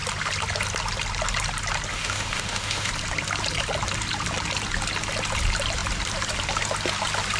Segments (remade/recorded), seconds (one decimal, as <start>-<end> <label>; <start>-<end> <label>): 0.0-1.9 recorded; 1.9-2.9 remade; 2.9-7.4 recorded